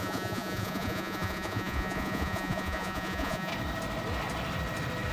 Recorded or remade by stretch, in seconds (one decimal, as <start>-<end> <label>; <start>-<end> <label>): 0.0-3.5 remade; 3.5-5.1 recorded